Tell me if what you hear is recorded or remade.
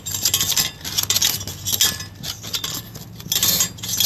recorded